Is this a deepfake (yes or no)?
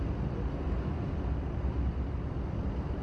no